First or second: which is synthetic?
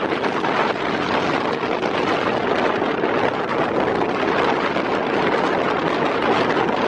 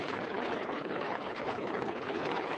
second